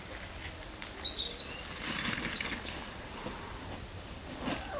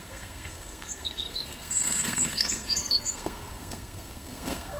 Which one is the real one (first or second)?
first